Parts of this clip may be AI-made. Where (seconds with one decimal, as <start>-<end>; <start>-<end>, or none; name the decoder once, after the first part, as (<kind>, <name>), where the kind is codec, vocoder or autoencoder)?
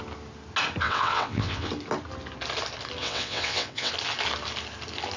0.8-1.7 (vocoder, WaveNeXt); 3.0-3.9